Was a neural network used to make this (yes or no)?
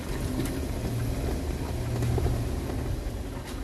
no